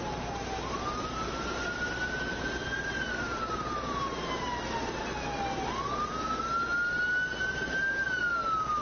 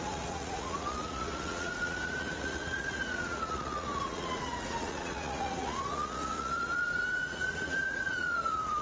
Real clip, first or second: first